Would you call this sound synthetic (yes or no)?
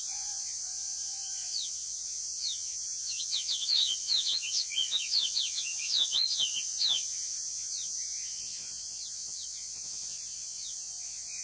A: yes